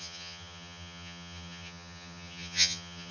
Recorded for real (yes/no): no